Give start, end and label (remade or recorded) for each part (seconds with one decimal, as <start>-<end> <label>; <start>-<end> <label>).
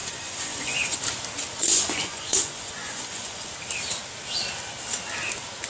0.0-1.0 remade; 1.0-1.6 recorded; 1.6-3.5 remade; 3.5-5.7 recorded